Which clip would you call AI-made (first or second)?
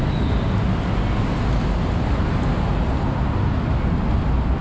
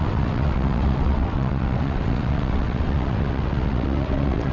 second